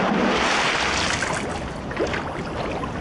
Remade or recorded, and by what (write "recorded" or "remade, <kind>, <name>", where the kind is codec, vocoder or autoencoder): recorded